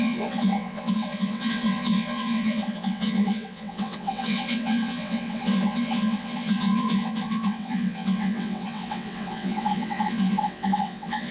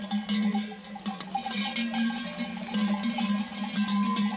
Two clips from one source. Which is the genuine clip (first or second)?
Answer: second